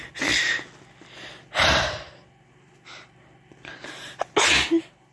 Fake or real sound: real